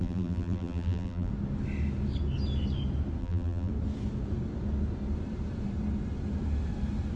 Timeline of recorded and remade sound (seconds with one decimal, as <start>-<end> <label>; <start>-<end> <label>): 0.0-1.3 remade; 1.3-3.2 recorded; 3.2-3.7 remade; 3.7-7.2 recorded